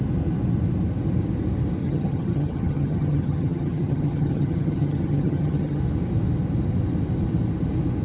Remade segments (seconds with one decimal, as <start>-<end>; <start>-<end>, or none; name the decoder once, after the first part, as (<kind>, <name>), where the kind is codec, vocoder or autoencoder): 1.8-5.8 (vocoder, HiFi-GAN)